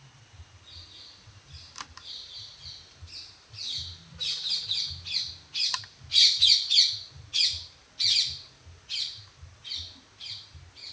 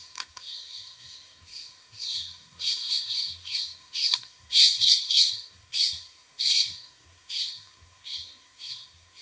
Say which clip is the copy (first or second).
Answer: second